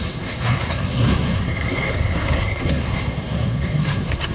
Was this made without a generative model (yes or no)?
no